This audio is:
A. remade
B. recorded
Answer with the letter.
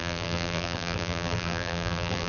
A